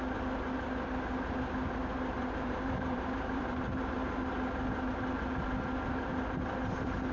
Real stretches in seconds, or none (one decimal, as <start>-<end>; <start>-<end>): 0.0-2.2; 4.3-7.1